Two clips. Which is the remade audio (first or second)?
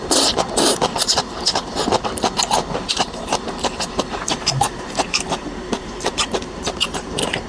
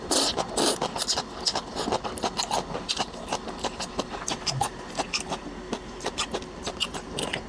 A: first